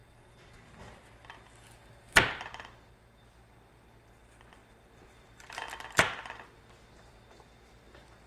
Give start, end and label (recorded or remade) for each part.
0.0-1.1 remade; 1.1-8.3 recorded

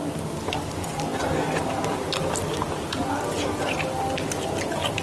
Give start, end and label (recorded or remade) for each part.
0.0-5.0 recorded

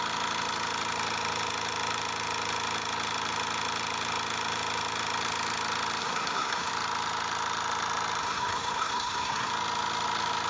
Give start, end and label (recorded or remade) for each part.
0.0-6.0 recorded; 6.0-6.7 remade; 6.7-8.2 recorded; 8.2-9.5 remade; 9.5-10.5 recorded

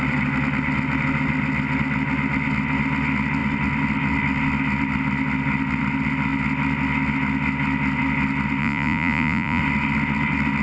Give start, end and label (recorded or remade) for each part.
0.0-8.6 recorded; 8.6-9.6 remade; 9.6-10.6 recorded

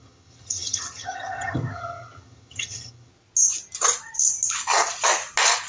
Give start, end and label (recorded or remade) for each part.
0.0-3.1 remade; 3.1-5.7 recorded

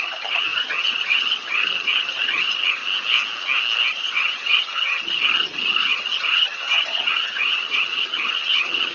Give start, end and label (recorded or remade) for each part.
0.0-2.8 remade; 2.8-3.9 recorded; 3.9-8.9 remade

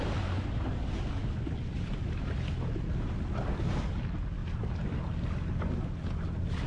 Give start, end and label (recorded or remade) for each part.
0.0-6.7 recorded